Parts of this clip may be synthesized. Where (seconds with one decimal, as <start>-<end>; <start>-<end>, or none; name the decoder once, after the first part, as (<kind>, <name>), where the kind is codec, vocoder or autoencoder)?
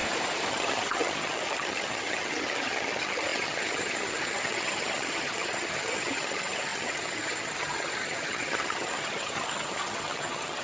0.5-10.6 (vocoder, HiFi-GAN)